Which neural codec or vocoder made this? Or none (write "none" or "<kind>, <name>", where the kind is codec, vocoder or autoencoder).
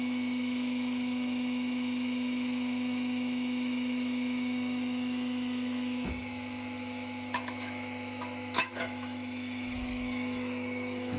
autoencoder, DAC-VAE